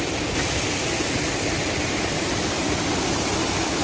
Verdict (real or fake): real